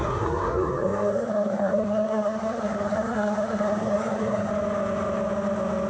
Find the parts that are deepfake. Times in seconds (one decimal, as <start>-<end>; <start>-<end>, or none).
0.0-4.5